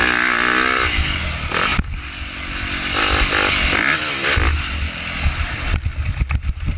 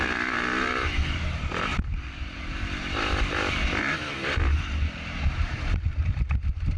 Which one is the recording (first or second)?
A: first